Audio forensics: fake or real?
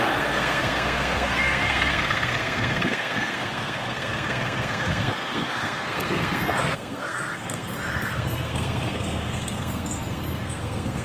fake